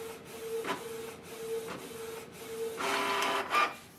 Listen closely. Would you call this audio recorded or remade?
recorded